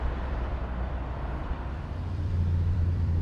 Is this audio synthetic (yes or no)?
yes